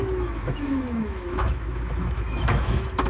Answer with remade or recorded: remade